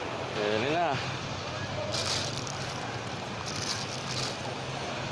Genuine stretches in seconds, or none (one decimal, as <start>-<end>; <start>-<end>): 0.0-5.1